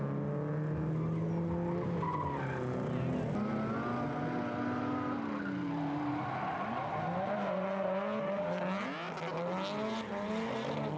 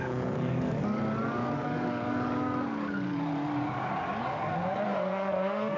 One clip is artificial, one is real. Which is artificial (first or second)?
second